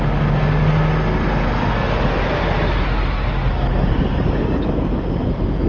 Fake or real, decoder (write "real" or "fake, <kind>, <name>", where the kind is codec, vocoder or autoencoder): real